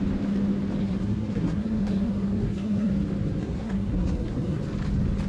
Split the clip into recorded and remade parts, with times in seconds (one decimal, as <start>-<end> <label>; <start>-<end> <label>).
0.0-0.8 recorded; 0.8-2.9 remade; 2.9-3.4 recorded; 3.4-4.6 remade; 4.6-5.3 recorded